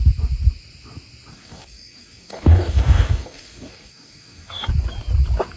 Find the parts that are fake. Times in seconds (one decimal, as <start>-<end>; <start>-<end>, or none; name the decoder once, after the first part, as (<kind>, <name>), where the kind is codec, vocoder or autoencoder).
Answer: 1.3-4.7 (codec, DAC)